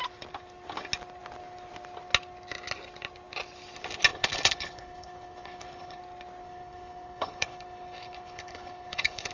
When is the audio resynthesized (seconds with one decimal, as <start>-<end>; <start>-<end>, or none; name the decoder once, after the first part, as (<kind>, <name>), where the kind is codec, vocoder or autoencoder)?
4.1-6.0 (codec, HILCodec); 6.4-9.3